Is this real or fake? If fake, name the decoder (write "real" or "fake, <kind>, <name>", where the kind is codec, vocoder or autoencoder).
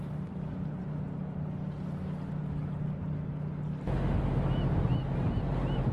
real